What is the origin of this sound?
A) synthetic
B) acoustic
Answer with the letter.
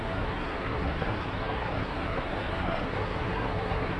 A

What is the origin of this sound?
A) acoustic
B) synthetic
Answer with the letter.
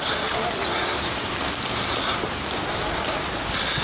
A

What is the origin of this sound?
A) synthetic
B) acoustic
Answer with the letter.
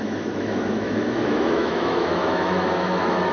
A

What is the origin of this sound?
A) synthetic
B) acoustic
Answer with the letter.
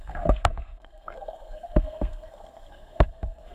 A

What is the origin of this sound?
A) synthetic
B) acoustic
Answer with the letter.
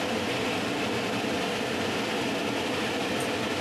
B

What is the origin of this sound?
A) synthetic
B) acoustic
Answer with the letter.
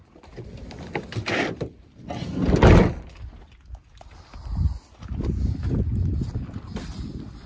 B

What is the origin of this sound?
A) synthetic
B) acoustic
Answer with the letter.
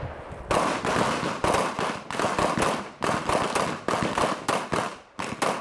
B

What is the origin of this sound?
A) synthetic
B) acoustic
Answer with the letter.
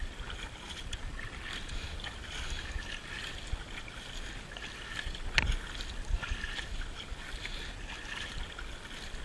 B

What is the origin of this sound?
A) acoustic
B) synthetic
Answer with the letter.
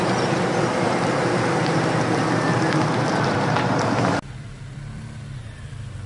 B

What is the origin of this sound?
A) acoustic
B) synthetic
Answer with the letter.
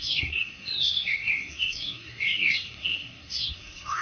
B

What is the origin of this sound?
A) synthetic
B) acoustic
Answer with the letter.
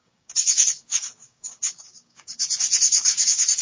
A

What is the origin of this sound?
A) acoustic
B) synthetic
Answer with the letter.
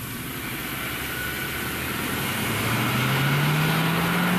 A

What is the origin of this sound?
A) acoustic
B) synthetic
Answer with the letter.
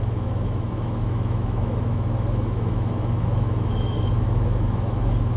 B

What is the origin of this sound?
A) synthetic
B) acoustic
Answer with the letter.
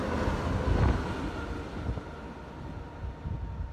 B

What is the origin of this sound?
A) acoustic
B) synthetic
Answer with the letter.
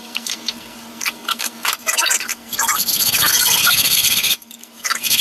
B